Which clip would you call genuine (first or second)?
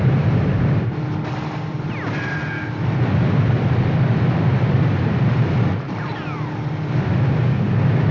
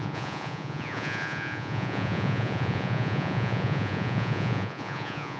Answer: first